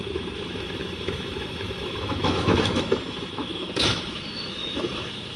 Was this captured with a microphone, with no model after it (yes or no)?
no